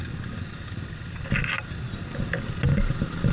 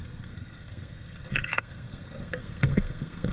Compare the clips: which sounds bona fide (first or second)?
first